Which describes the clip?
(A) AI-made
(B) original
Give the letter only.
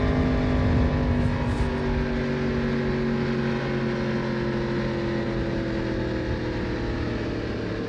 B